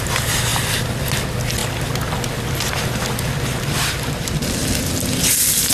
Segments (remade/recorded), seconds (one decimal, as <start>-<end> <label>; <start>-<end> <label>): 0.0-5.7 recorded